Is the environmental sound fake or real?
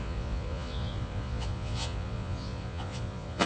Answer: fake